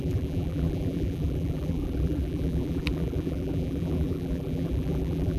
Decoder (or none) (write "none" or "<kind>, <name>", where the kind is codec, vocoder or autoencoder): vocoder, BigVGAN v2